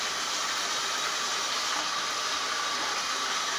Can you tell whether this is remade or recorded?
recorded